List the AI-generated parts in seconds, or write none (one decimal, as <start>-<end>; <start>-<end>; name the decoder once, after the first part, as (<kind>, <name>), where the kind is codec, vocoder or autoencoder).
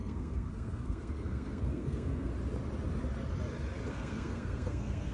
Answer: 0.0-2.3 (codec, SNAC); 3.9-5.1